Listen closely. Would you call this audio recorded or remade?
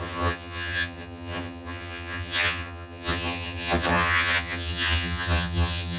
remade